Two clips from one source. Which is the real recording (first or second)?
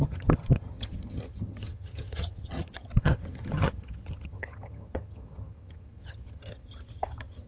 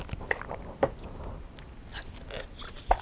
second